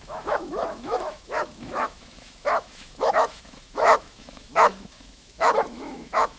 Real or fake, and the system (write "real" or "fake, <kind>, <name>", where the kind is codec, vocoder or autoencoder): fake, autoencoder, DAC-VAE